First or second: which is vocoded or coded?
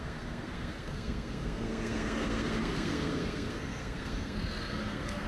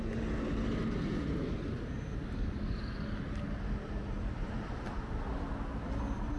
first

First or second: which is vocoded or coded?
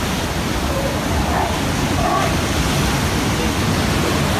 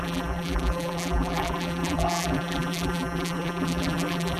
second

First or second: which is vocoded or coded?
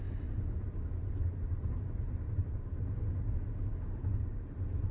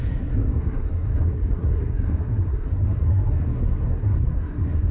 second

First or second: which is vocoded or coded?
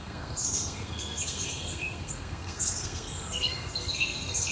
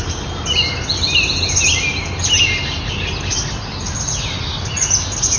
first